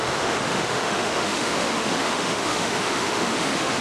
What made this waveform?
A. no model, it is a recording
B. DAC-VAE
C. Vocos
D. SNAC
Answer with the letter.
B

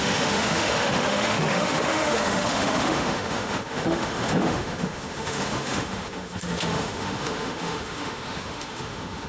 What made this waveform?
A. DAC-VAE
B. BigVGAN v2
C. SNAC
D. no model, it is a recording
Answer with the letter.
A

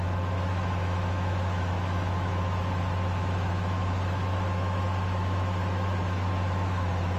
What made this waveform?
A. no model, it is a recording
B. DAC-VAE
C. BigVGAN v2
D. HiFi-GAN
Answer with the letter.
B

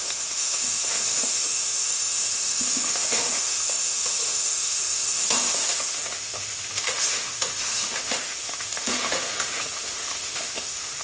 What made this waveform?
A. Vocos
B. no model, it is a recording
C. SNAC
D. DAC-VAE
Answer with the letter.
D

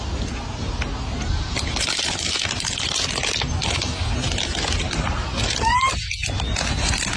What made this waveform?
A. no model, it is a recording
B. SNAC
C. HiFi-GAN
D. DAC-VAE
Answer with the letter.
A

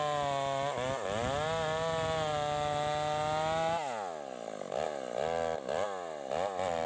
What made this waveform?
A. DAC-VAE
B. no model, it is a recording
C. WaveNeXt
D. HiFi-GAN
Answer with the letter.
B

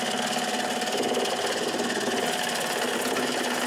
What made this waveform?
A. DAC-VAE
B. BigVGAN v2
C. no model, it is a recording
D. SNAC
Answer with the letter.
C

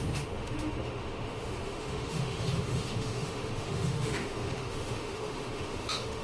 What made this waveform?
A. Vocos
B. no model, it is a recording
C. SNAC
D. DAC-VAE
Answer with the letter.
D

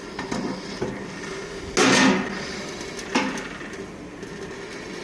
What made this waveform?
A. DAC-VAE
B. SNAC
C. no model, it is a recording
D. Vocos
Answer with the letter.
C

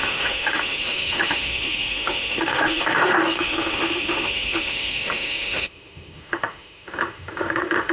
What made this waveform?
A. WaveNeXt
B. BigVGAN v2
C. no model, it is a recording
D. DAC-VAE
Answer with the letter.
D